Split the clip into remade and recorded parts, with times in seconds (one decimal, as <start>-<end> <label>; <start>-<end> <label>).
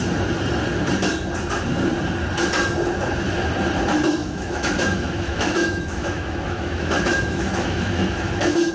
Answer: 0.0-4.2 recorded; 4.2-8.7 remade